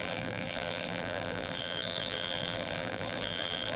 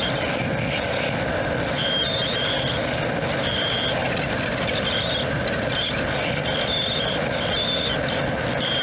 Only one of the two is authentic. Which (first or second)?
second